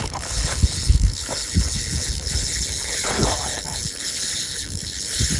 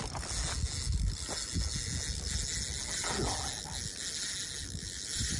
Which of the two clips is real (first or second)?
second